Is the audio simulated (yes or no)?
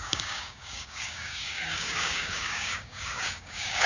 yes